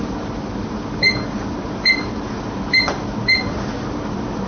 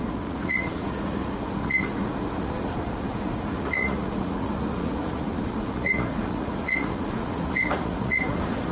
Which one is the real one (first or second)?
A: first